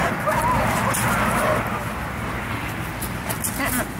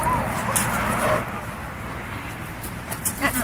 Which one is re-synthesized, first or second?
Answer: second